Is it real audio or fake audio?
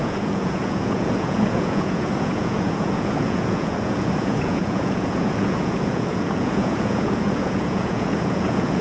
fake